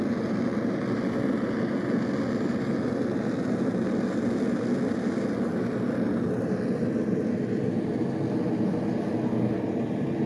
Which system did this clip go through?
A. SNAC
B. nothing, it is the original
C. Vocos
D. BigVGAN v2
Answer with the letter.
B